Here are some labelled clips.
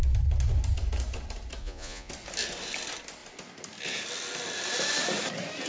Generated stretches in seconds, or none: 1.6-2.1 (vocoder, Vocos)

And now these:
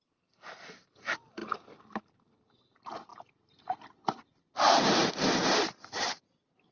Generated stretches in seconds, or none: 0.0-1.4 (vocoder, BigVGAN v2); 1.9-3.1; 4.5-5.0; 5.5-6.7

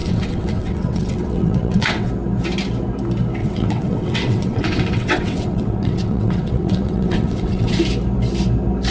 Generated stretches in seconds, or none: 0.0-2.1 (vocoder, WaveNeXt); 3.4-7.8

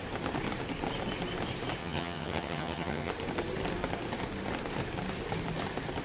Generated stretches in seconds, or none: 1.8-3.1 (vocoder, HiFi-GAN)